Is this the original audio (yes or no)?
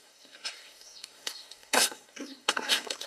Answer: no